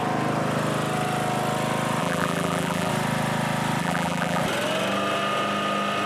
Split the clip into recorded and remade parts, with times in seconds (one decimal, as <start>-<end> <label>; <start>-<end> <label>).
0.0-2.0 recorded; 2.0-2.9 remade; 2.9-3.8 recorded; 3.8-4.4 remade; 4.4-6.1 recorded